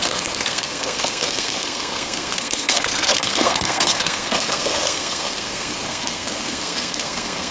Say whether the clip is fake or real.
fake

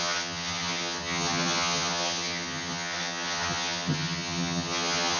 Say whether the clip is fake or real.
fake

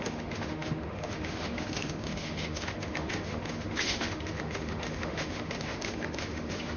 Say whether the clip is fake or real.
fake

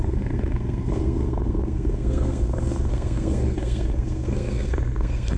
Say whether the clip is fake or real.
fake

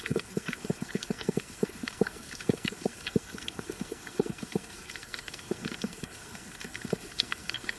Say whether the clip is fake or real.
fake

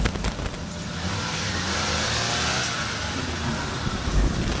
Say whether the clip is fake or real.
real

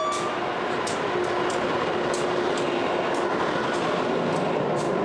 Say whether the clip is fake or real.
real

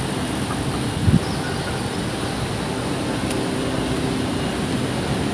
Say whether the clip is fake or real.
real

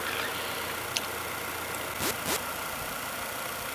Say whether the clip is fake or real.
real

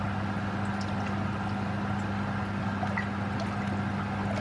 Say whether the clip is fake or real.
real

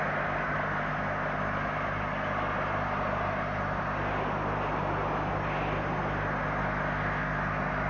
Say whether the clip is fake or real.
real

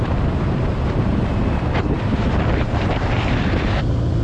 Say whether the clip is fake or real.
fake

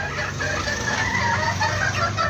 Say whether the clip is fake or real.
real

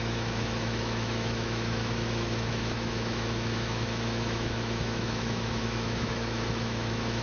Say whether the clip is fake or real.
fake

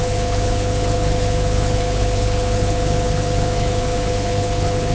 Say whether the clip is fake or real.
fake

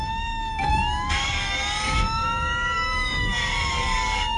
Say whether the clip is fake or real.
fake